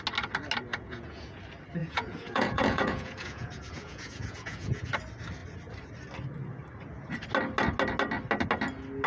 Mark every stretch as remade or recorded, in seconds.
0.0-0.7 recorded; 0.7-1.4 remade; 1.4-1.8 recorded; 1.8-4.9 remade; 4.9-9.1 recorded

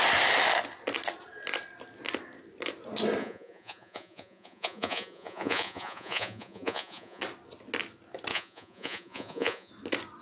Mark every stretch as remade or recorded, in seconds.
0.0-3.2 recorded; 3.2-7.2 remade; 7.2-8.3 recorded; 8.3-9.7 remade; 9.7-10.2 recorded

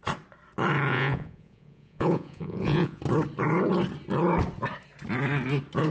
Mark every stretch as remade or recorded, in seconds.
0.0-0.9 recorded; 0.9-3.0 remade; 3.0-5.9 recorded

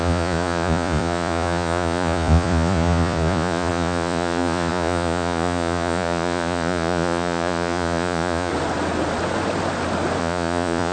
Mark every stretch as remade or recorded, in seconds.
0.0-8.5 remade; 8.5-10.2 recorded; 10.2-10.9 remade

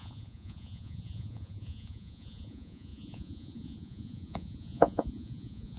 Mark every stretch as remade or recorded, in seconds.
0.0-5.8 remade

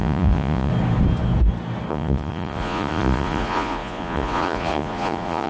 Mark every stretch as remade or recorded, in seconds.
0.0-0.7 remade; 0.7-1.9 recorded; 1.9-5.5 remade

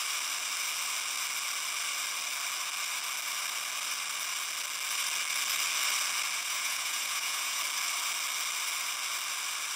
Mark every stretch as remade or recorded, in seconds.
0.0-6.4 recorded; 6.4-7.6 remade; 7.6-9.8 recorded

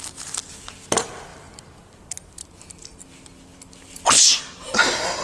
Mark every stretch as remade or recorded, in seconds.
0.0-5.2 recorded